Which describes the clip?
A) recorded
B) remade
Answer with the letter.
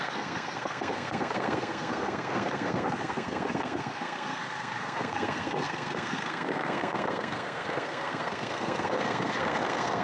B